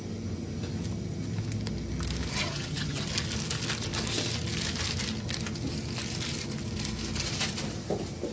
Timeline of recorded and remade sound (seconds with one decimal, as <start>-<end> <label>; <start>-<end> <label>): 0.0-2.3 recorded; 2.3-3.1 remade; 3.1-8.3 recorded